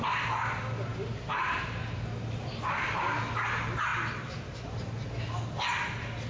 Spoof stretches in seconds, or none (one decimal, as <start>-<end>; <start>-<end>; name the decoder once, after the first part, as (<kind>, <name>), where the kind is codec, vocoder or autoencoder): none